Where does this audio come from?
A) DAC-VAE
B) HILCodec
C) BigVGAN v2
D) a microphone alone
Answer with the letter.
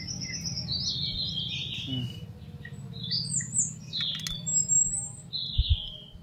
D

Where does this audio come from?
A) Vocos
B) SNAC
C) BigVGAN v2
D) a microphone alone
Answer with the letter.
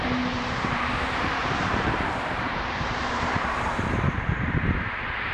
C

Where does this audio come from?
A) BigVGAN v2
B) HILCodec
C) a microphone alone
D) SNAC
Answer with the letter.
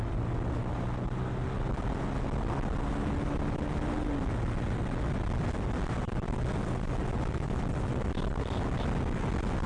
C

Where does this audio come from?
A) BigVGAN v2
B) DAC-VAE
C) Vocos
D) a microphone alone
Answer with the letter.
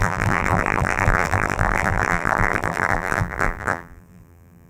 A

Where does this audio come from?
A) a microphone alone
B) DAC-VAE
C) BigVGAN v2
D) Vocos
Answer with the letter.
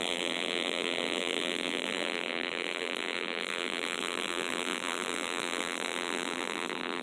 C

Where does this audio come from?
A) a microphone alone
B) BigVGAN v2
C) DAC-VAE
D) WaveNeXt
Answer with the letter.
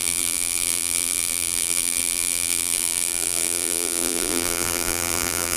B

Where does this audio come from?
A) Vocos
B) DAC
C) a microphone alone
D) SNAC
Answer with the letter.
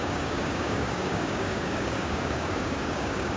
B